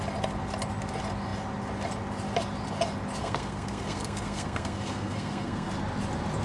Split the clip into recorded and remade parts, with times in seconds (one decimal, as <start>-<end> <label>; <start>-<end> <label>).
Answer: 0.0-3.2 recorded; 3.2-5.7 remade; 5.7-6.4 recorded